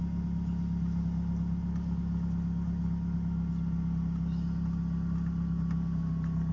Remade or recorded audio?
recorded